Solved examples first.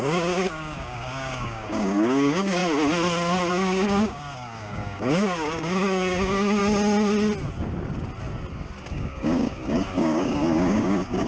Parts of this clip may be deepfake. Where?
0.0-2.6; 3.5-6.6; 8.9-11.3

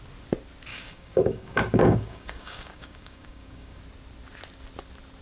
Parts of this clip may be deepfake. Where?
0.7-3.8

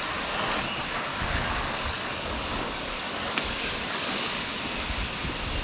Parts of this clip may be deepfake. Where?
1.1-4.5

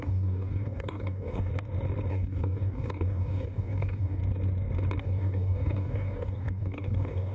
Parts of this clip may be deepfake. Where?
0.0-1.5; 2.1-4.2; 5.0-7.3